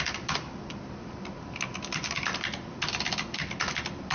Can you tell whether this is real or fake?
real